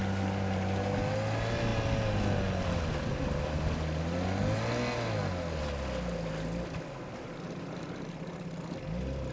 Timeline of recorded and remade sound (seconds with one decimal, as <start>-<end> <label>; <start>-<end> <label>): 0.0-9.3 recorded

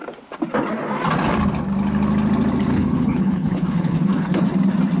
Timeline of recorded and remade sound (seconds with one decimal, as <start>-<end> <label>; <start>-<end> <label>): 0.0-2.7 recorded; 2.7-4.4 remade; 4.4-5.0 recorded

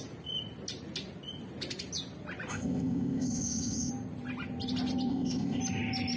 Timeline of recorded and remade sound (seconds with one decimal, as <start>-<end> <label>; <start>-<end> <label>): 0.0-2.5 recorded; 2.5-3.9 remade; 3.9-5.1 recorded; 5.1-5.6 remade; 5.6-6.2 recorded

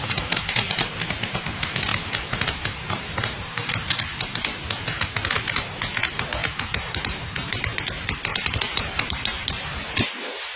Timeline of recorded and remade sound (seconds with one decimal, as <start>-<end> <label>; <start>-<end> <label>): 0.0-1.9 recorded; 1.9-3.7 remade; 3.7-6.4 recorded; 6.4-7.8 remade; 7.8-8.3 recorded; 8.3-9.9 remade; 9.9-10.6 recorded

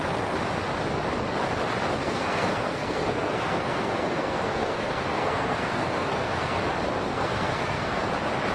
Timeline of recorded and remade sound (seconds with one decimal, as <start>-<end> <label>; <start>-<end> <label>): 0.0-2.0 recorded; 2.0-6.6 remade; 6.6-7.1 recorded; 7.1-8.1 remade; 8.1-8.5 recorded

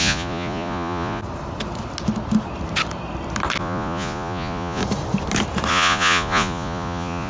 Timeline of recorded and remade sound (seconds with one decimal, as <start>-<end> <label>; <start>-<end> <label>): 0.0-1.2 remade; 1.2-3.6 recorded; 3.6-4.8 remade; 4.8-5.7 recorded; 5.7-7.3 remade

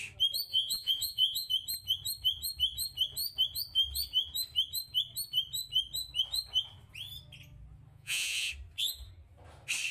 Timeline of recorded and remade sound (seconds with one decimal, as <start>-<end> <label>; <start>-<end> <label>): 0.0-0.5 recorded; 0.5-1.5 remade; 1.5-7.9 recorded; 7.9-8.5 remade; 8.5-9.9 recorded